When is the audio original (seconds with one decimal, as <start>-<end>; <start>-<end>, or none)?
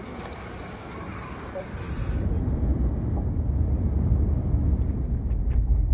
0.0-5.9